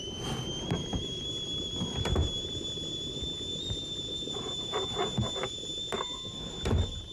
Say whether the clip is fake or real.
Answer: real